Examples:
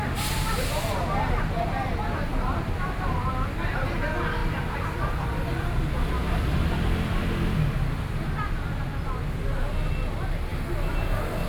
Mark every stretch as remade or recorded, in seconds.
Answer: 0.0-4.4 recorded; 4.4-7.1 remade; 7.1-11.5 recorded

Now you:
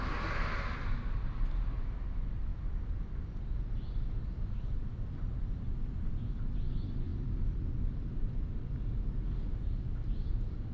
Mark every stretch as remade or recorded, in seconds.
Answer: 0.0-10.7 recorded